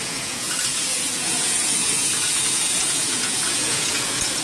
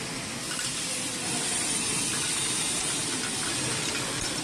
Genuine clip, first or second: second